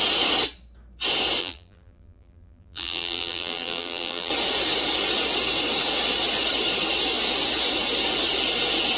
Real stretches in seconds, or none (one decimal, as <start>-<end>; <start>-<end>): 0.0-1.4; 4.3-9.0